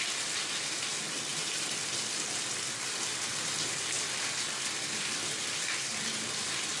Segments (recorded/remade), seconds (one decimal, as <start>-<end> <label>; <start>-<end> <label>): 0.0-6.8 recorded